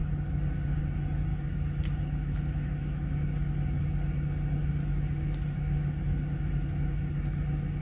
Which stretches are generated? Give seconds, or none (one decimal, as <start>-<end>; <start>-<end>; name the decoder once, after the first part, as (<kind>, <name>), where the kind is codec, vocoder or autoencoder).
1.3-3.8 (autoencoder, DAC-VAE); 4.6-7.8